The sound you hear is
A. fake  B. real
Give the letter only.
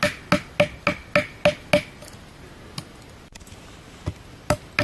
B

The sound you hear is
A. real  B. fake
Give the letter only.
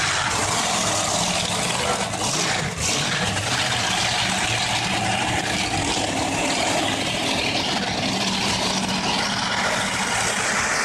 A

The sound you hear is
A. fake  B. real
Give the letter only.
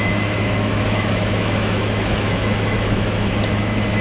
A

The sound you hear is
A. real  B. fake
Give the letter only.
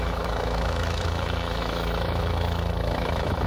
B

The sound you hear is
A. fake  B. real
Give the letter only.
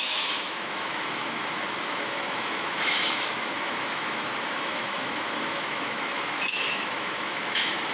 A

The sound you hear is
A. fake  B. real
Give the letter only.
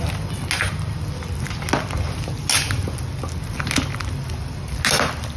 B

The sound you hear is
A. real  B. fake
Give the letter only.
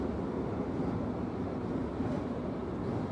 A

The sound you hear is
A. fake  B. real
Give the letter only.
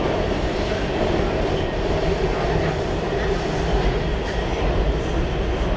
B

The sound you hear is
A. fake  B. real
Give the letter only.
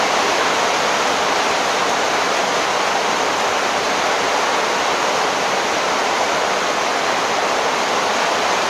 B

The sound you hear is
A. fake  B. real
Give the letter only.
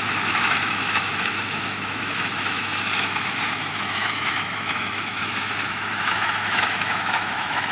A